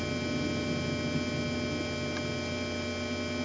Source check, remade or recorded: recorded